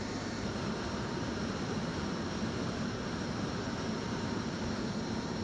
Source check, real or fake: fake